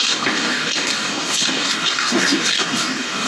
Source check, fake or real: fake